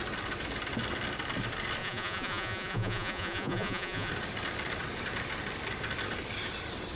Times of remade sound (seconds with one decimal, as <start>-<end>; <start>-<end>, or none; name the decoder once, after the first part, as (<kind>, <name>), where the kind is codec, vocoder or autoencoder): 1.8-4.1 (vocoder, Vocos)